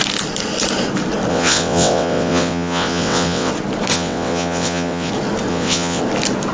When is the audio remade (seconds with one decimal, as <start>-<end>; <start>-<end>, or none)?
1.3-3.5; 3.9-5.1; 5.5-6.0